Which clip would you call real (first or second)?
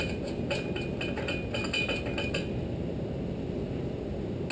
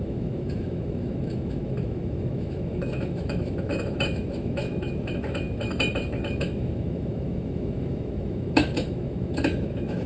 first